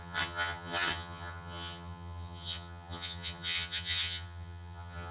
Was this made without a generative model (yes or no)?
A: no